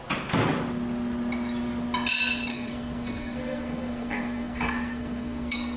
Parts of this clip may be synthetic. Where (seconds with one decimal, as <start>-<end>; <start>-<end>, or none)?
2.5-5.8